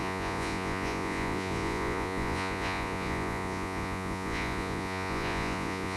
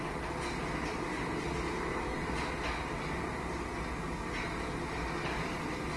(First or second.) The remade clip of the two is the first